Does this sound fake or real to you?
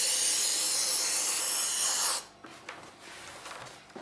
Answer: real